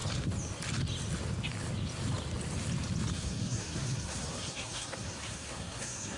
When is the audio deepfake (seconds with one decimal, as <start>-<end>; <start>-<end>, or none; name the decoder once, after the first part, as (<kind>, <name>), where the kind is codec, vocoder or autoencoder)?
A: 3.1-6.2 (codec, SNAC)

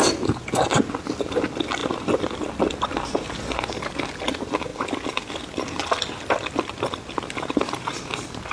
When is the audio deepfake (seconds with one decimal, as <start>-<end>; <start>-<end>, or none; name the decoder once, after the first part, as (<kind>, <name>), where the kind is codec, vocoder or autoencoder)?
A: none

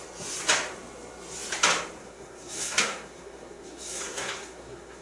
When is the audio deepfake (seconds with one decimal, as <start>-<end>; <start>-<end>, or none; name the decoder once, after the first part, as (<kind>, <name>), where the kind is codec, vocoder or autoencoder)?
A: 2.0-5.0 (codec, SNAC)